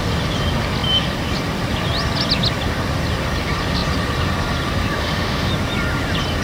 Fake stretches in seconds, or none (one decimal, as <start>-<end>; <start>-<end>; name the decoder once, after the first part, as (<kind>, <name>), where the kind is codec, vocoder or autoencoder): 5.0-5.5 (autoencoder, DAC-VAE)